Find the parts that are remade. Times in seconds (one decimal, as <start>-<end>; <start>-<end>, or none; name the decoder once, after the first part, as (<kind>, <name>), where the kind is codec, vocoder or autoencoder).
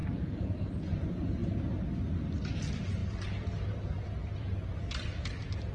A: 0.0-0.6 (vocoder, Vocos)